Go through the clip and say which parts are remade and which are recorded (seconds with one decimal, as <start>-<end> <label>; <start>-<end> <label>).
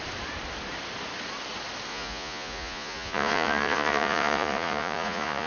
0.0-1.9 recorded; 1.9-5.5 remade